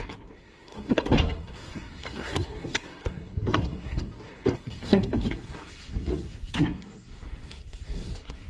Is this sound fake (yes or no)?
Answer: yes